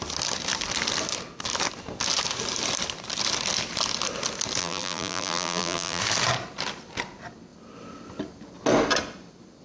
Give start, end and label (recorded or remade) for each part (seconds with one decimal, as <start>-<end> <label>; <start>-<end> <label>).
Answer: 0.0-4.6 recorded; 4.6-6.0 remade; 6.0-9.6 recorded